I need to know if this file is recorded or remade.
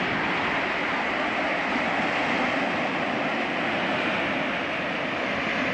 recorded